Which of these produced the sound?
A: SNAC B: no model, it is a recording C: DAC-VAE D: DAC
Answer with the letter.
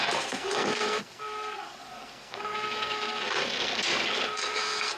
A